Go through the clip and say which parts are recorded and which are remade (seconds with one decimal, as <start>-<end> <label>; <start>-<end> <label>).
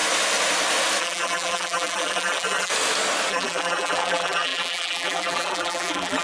0.0-1.0 recorded; 1.0-2.7 remade; 2.7-3.3 recorded; 3.3-6.2 remade